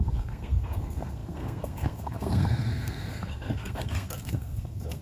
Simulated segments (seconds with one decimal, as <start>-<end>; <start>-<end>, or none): 0.0-5.0